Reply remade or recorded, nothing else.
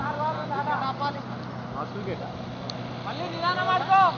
recorded